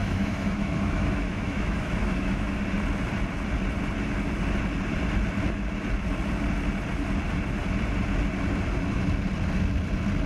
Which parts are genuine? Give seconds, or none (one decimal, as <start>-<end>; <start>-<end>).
2.6-10.3